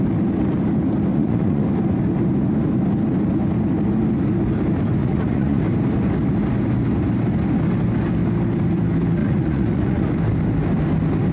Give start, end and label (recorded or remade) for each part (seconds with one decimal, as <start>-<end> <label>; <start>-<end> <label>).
0.0-1.1 recorded; 1.1-1.6 remade; 1.6-5.0 recorded; 5.0-5.6 remade; 5.6-9.2 recorded; 9.2-10.1 remade; 10.1-11.3 recorded